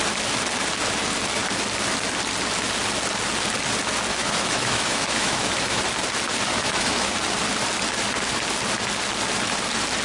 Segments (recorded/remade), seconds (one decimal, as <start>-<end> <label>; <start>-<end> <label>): 0.0-4.1 recorded; 4.1-5.8 remade; 5.8-6.5 recorded; 6.5-7.1 remade; 7.1-10.0 recorded